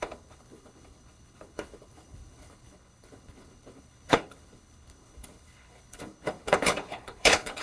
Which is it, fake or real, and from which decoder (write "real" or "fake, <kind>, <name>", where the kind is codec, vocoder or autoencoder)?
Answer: fake, codec, HILCodec